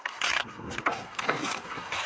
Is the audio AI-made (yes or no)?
yes